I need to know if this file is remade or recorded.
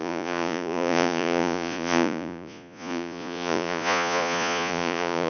remade